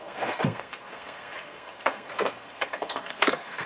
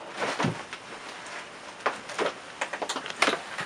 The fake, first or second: first